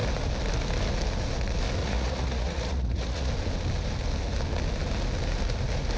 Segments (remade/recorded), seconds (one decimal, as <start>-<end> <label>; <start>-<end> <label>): 0.0-1.8 recorded; 1.8-3.3 remade; 3.3-6.0 recorded